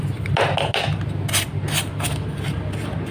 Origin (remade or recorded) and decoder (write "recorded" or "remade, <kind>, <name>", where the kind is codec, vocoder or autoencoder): recorded